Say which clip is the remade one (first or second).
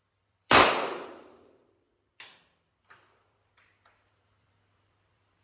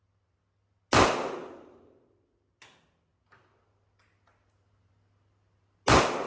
first